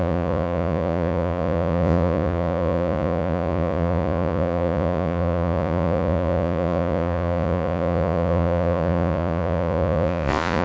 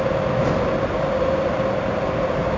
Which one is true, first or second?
second